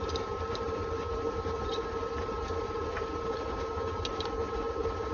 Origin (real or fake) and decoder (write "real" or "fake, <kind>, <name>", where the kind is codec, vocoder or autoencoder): real